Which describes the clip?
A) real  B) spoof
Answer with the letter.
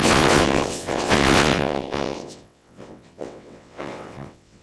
B